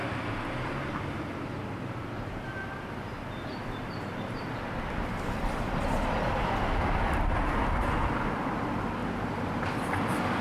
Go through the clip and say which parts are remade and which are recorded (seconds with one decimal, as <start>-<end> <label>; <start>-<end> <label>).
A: 0.0-10.4 recorded